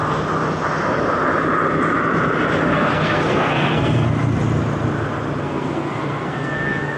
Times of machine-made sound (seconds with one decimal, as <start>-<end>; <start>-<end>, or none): 2.7-4.1; 5.4-7.0